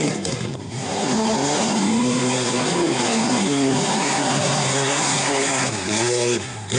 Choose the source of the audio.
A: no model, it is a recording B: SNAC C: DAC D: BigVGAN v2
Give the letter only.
B